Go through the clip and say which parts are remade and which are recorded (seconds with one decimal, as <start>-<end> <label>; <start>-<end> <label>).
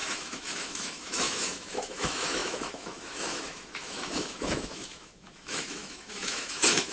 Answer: 0.0-6.9 remade